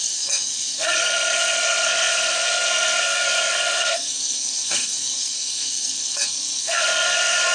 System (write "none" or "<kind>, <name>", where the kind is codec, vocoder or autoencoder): codec, SNAC